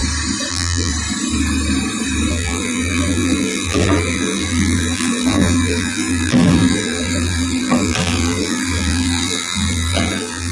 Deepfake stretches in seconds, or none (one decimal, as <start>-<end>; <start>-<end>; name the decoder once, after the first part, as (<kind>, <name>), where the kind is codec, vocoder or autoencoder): 0.5-0.9 (vocoder, BigVGAN v2); 2.3-10.5